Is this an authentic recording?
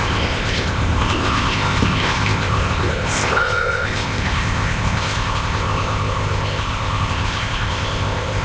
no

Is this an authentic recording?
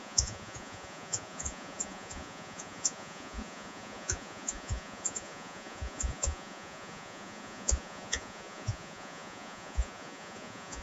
no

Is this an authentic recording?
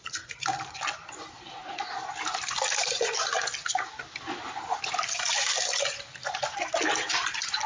yes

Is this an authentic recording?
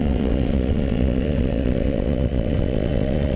no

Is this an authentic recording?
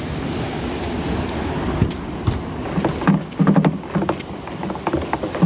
yes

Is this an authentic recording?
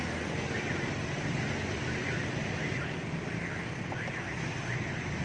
yes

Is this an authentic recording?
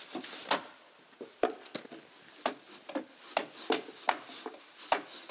yes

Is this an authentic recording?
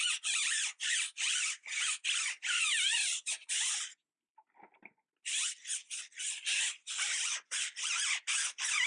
yes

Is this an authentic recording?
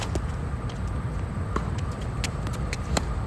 yes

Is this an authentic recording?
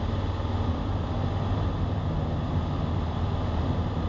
yes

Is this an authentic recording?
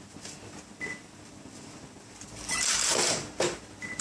yes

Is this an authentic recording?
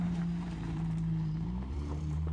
no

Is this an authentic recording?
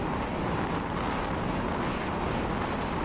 yes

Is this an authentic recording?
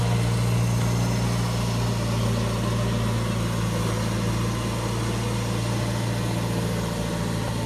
yes